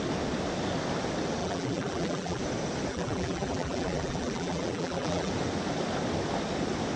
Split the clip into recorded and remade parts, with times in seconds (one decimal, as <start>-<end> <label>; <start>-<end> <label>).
0.0-1.4 recorded; 1.4-2.4 remade; 2.4-2.9 recorded; 2.9-5.3 remade; 5.3-7.0 recorded